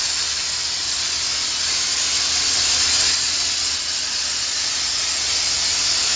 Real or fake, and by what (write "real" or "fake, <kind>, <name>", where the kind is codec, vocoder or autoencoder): real